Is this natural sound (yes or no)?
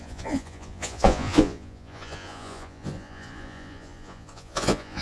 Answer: no